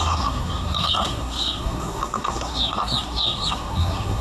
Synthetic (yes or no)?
yes